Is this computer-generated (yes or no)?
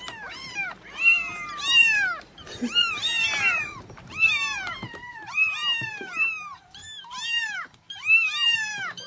yes